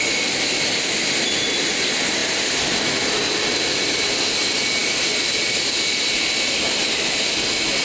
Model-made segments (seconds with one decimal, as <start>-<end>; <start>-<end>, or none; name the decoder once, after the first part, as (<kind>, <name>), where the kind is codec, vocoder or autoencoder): 4.8-6.8 (vocoder, BigVGAN v2)